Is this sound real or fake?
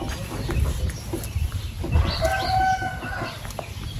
real